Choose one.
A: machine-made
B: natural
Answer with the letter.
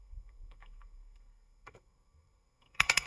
A